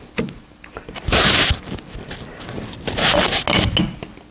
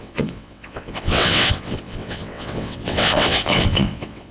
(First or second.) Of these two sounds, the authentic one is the first